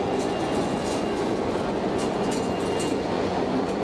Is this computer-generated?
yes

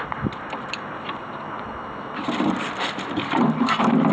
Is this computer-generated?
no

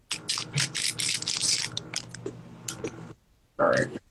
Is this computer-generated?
no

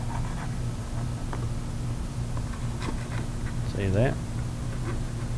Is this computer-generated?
no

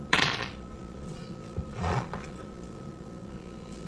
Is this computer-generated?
yes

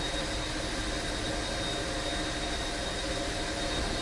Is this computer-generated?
no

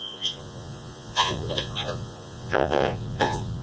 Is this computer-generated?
yes